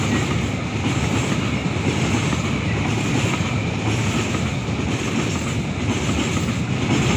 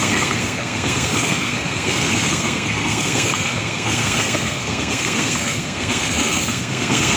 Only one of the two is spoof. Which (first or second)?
second